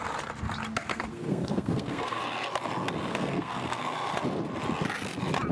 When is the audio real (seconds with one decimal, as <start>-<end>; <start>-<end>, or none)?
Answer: 0.0-0.9; 2.2-3.1; 3.8-5.5